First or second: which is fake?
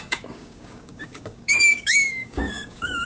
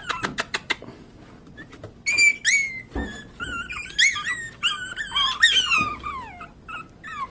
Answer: first